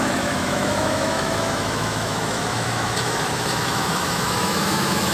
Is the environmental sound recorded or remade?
remade